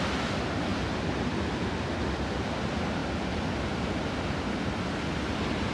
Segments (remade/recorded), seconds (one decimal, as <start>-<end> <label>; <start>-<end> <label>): 0.0-0.7 recorded; 0.7-2.1 remade; 2.1-5.7 recorded